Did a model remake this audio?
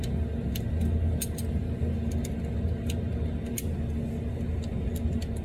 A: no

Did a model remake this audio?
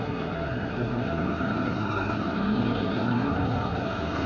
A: yes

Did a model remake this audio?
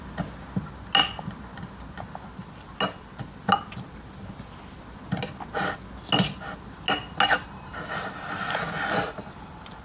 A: no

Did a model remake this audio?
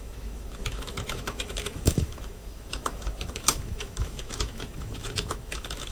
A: yes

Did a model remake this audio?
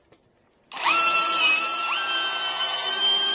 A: no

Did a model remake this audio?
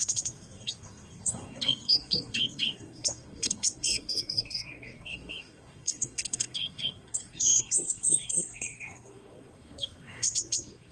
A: yes